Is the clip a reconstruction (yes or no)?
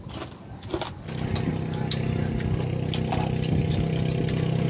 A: no